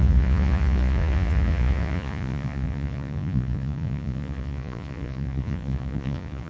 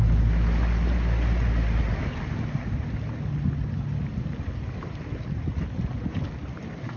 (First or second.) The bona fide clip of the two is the second